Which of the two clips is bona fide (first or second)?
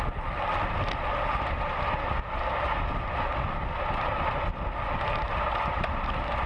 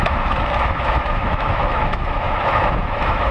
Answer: first